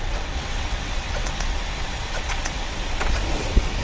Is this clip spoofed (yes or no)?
yes